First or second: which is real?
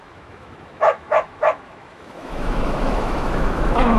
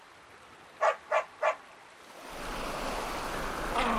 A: second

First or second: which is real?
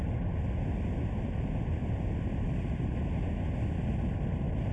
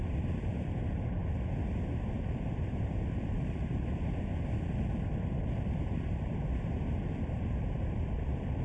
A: first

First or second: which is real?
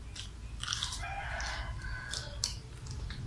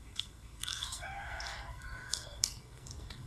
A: first